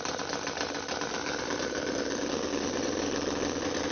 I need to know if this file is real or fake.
real